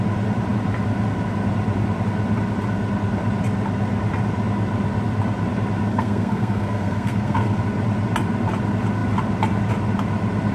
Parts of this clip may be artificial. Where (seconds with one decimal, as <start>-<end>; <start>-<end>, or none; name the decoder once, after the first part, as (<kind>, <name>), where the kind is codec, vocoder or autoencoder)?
5.9-7.6 (codec, SNAC)